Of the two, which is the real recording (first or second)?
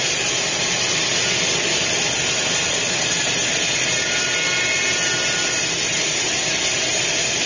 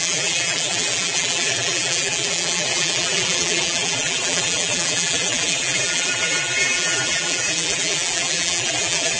first